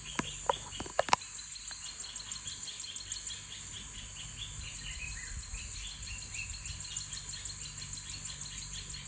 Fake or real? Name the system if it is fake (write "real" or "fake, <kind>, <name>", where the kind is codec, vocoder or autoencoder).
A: real